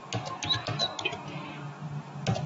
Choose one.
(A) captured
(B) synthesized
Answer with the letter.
A